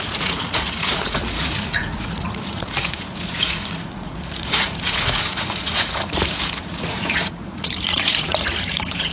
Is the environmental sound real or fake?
fake